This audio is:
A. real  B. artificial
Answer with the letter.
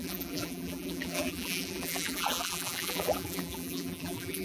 B